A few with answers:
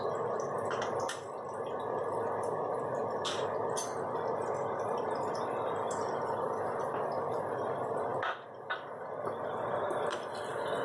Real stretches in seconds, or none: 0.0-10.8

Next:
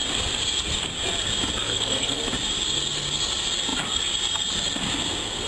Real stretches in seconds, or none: 0.0-1.6; 2.2-5.5

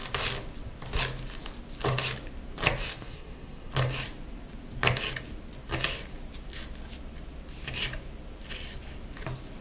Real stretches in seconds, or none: 0.0-2.9; 3.7-9.6